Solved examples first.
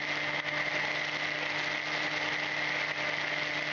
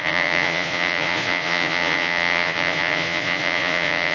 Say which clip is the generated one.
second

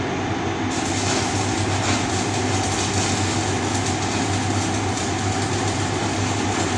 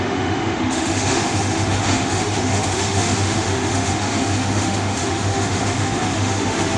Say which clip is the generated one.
second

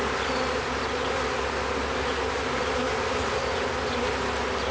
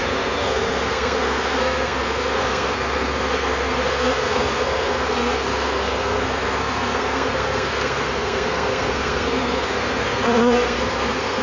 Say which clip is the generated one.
second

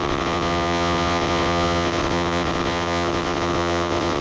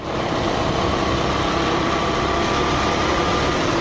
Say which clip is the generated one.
first